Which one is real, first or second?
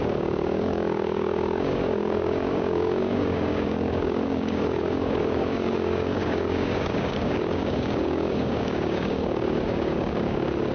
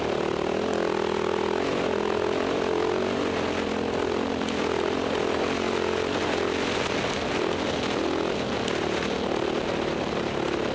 second